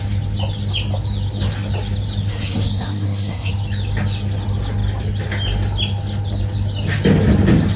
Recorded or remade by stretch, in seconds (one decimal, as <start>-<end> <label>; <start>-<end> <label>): 0.0-2.3 recorded; 2.3-3.5 remade; 3.5-7.8 recorded